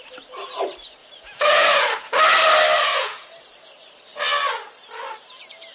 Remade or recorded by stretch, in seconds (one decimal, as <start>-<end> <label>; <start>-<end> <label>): 0.0-1.0 recorded; 1.0-2.1 remade; 2.1-2.9 recorded; 2.9-3.5 remade; 3.5-5.7 recorded